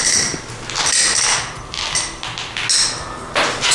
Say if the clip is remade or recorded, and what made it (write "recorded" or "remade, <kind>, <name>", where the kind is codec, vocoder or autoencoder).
recorded